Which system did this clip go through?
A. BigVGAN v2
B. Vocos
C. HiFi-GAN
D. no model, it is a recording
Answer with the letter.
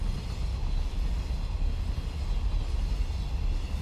D